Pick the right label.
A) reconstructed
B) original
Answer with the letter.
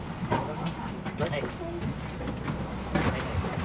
B